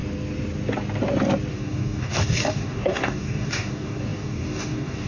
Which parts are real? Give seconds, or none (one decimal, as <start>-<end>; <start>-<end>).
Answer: 0.0-1.5